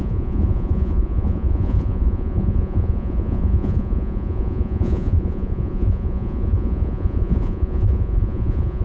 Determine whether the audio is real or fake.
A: fake